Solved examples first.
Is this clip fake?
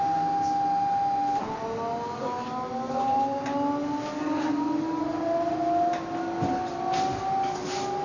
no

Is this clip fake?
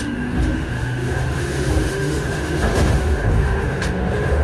yes